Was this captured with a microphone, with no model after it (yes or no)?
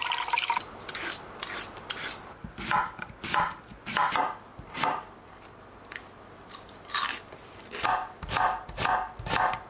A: yes